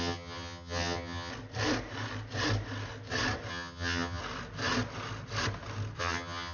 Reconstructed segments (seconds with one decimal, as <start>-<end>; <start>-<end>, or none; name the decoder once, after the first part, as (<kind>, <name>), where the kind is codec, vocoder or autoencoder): 0.0-1.3 (vocoder, HiFi-GAN); 3.5-4.2; 6.0-6.5